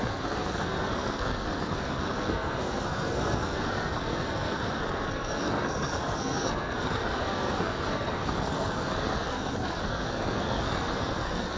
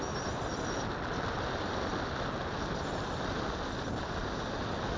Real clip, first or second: second